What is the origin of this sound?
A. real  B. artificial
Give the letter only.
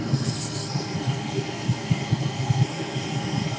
B